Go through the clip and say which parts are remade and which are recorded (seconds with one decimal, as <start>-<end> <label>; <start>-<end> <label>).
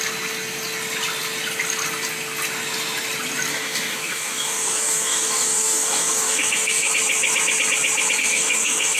0.0-3.5 recorded; 3.5-6.9 remade; 6.9-8.2 recorded; 8.2-9.0 remade